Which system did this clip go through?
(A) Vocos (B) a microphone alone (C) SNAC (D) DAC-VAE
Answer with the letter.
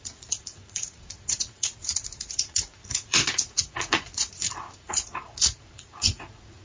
A